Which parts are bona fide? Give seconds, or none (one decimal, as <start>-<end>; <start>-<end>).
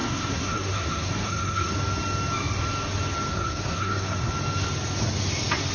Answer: 1.7-3.3; 4.3-5.7